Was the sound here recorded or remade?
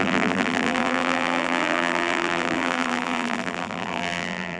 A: remade